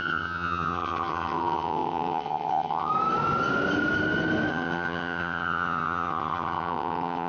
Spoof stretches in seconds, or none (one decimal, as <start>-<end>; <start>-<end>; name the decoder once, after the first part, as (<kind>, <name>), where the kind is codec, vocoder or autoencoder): 0.0-2.9 (vocoder, HiFi-GAN); 4.5-7.3